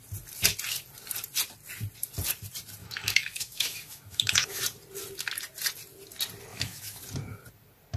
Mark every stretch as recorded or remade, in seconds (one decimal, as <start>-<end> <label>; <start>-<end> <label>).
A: 0.0-2.8 recorded; 2.8-4.6 remade; 4.6-6.5 recorded; 6.5-7.0 remade; 7.0-8.0 recorded